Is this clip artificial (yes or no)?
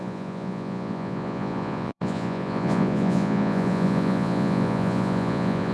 yes